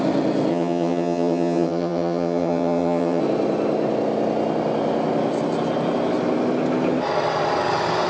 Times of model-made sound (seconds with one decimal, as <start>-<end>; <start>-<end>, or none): 0.5-3.2